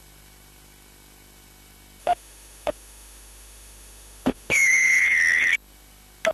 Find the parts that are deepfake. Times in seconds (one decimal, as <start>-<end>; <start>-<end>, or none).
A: 2.0-5.0